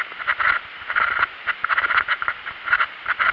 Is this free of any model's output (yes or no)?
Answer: yes